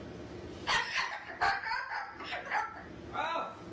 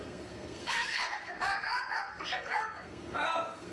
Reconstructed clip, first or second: second